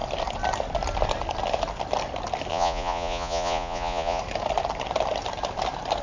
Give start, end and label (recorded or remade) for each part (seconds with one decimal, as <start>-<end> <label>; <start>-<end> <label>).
0.0-2.5 recorded; 2.5-4.2 remade; 4.2-6.0 recorded